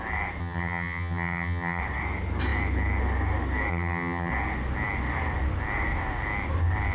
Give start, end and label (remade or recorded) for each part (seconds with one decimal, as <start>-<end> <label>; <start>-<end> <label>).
0.0-0.4 recorded; 0.4-1.8 remade; 1.8-3.7 recorded; 3.7-4.3 remade; 4.3-6.9 recorded